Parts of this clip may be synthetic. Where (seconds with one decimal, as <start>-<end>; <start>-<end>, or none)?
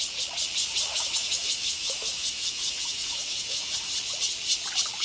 0.9-3.9